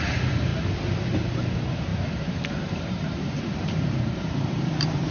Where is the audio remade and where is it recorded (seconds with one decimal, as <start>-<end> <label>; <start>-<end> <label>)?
0.0-0.5 remade; 0.5-1.0 recorded; 1.0-5.1 remade